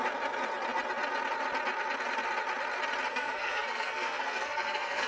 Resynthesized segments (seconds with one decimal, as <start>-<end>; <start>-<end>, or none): 3.1-5.1